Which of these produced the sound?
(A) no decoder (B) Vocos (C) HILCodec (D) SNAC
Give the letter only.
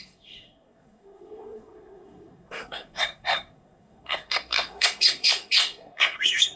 D